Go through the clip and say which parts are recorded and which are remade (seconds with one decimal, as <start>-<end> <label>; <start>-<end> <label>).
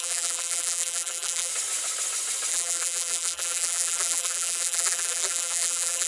0.0-1.5 remade; 1.5-2.5 recorded; 2.5-6.1 remade